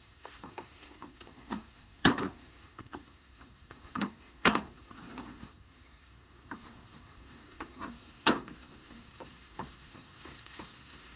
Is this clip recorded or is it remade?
remade